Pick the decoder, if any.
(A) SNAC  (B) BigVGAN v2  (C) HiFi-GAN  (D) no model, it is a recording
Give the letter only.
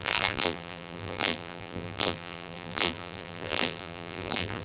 B